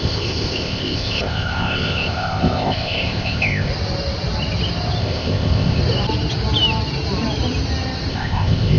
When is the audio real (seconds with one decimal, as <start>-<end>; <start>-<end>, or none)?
3.7-5.0; 5.8-8.1